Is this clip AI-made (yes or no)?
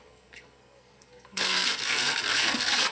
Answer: yes